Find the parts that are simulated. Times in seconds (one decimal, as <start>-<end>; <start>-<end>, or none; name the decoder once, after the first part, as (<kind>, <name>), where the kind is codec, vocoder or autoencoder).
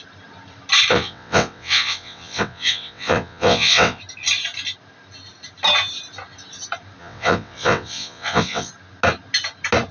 0.9-4.0 (vocoder, WaveNeXt); 7.0-8.7